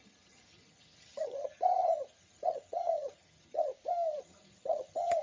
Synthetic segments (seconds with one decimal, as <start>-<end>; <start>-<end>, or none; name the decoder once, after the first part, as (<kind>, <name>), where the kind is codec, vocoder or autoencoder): 0.0-3.7 (vocoder, HiFi-GAN); 4.2-5.2